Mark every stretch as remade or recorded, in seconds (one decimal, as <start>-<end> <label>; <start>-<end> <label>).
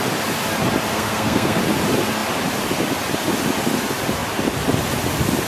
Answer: 0.0-0.9 recorded; 0.9-1.6 remade; 1.6-5.5 recorded